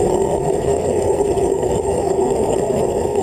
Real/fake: fake